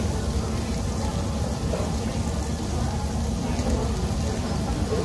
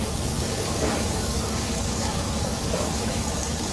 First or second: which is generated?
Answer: second